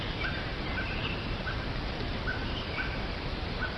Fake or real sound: fake